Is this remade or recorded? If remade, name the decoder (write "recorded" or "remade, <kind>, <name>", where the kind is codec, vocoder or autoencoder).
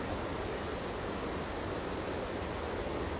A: recorded